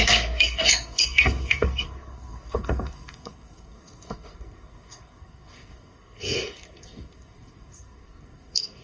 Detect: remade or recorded remade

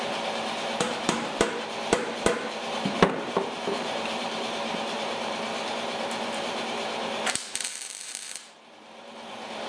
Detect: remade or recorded remade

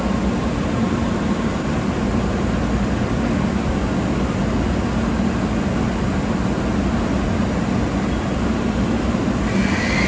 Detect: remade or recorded recorded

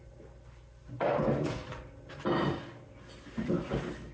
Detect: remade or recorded recorded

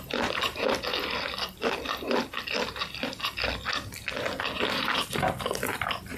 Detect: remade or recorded recorded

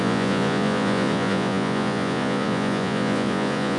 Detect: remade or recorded remade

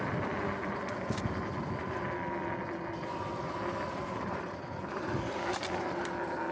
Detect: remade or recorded recorded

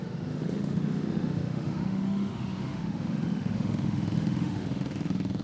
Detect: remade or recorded remade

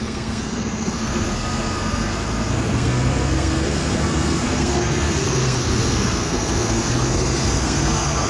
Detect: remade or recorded remade